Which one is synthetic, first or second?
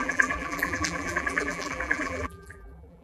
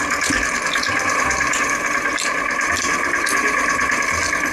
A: first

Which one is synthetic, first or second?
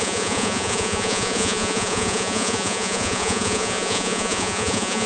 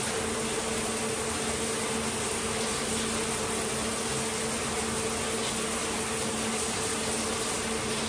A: first